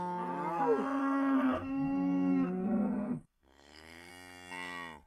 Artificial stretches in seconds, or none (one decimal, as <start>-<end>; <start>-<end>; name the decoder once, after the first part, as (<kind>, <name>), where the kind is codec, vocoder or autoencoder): 1.0-4.1 (codec, SNAC)